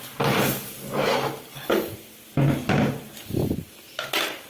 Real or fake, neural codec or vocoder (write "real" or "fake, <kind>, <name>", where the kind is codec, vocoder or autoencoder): real